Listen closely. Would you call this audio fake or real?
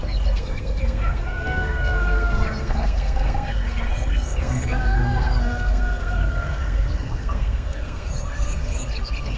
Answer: fake